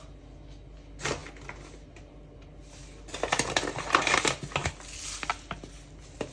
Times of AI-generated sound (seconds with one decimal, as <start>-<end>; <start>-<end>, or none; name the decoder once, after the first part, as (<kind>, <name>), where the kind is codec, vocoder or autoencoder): none